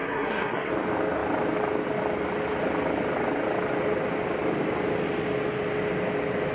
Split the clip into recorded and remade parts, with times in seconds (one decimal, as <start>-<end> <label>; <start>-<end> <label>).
0.0-0.7 remade; 0.7-6.5 recorded